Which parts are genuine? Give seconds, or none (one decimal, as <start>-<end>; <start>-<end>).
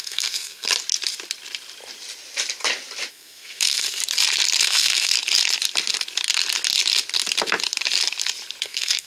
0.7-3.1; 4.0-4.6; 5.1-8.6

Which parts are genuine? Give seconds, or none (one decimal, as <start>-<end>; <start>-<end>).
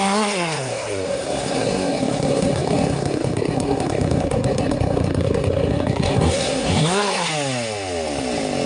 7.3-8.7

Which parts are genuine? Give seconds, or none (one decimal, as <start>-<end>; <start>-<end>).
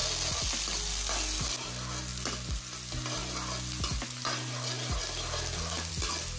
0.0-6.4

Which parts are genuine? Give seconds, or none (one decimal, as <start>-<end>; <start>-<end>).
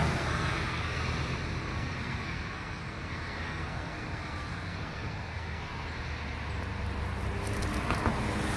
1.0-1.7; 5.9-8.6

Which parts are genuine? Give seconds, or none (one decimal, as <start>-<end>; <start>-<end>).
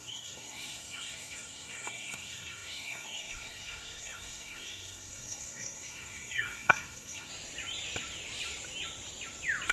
7.3-9.7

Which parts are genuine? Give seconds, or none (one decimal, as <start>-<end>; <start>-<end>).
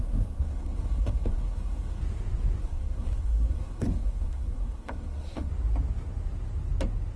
2.0-2.6; 5.5-7.2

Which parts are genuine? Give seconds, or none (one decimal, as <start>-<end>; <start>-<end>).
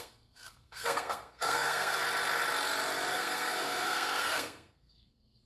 2.0-3.1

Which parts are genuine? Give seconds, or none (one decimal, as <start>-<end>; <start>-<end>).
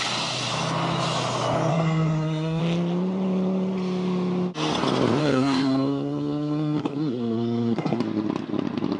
0.0-1.7; 2.6-5.2; 8.0-9.0